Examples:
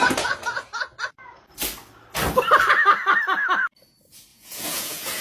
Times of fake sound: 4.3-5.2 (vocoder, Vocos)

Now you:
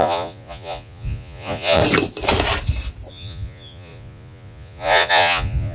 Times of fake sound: 0.0-1.8 (vocoder, Vocos); 3.1-5.7